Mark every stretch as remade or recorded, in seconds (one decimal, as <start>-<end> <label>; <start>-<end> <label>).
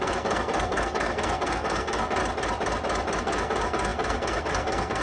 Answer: 0.0-2.2 remade; 2.2-3.2 recorded; 3.2-5.0 remade